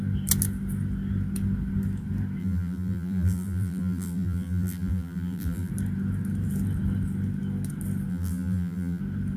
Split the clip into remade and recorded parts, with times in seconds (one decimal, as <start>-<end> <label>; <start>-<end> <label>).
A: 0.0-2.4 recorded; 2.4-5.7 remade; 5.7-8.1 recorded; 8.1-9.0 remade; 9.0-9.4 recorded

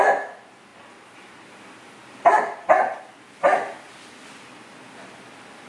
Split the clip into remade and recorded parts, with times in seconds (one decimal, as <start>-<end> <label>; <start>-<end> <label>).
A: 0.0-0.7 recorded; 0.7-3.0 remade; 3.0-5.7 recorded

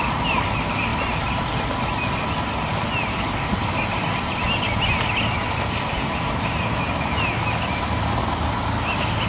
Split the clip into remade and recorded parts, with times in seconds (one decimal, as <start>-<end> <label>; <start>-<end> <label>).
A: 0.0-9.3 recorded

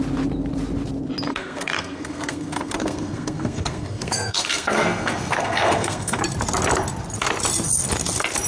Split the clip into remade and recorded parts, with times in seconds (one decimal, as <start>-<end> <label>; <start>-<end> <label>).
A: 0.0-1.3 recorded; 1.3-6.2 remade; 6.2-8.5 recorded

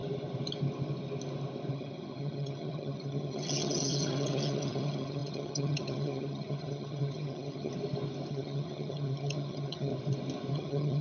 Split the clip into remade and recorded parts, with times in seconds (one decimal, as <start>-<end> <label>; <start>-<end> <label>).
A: 0.0-1.7 recorded; 1.7-7.7 remade; 7.7-8.3 recorded; 8.3-9.9 remade; 9.9-10.5 recorded; 10.5-11.0 remade

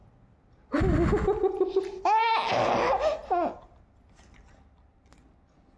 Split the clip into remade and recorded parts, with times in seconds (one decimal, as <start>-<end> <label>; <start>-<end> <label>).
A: 0.0-5.8 recorded

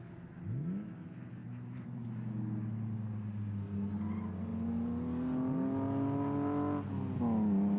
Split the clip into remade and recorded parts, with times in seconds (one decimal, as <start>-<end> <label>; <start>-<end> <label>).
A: 0.0-1.4 recorded; 1.4-2.0 remade; 2.0-7.8 recorded

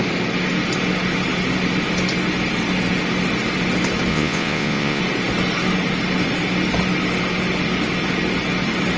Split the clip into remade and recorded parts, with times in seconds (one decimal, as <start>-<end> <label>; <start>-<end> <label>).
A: 0.0-4.1 recorded; 4.1-5.0 remade; 5.0-9.0 recorded